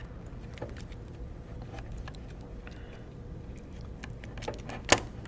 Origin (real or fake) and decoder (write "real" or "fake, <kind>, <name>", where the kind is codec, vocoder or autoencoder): real